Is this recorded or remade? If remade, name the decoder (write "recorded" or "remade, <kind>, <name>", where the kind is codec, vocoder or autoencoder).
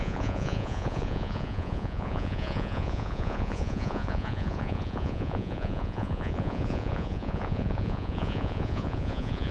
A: remade, vocoder, Vocos